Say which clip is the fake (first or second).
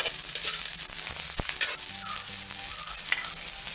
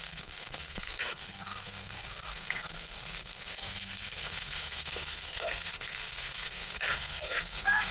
second